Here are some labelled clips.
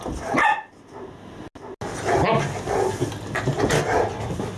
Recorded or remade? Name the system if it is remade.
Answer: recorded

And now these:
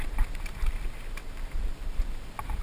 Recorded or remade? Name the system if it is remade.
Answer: recorded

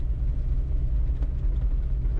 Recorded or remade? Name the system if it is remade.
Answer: recorded